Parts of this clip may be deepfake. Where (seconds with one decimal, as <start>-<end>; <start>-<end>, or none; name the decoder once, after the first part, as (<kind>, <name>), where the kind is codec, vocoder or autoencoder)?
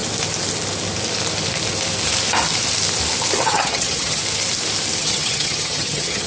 3.4-4.2 (vocoder, HiFi-GAN); 5.0-6.3